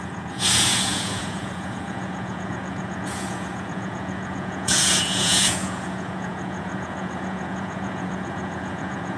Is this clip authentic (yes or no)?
no